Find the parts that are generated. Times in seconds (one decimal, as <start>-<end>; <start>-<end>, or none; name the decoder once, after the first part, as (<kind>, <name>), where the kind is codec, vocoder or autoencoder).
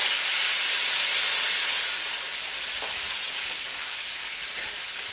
3.7-4.3 (codec, DAC)